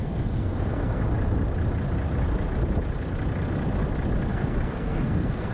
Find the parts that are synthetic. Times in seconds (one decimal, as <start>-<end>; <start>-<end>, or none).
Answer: 0.0-1.0; 4.3-5.5